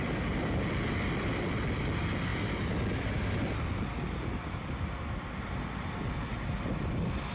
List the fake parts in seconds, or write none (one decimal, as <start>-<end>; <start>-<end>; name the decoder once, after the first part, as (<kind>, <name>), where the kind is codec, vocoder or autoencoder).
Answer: none